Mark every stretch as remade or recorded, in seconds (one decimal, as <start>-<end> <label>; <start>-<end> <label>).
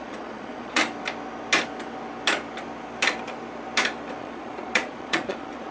0.0-0.8 remade; 0.8-4.2 recorded; 4.2-5.7 remade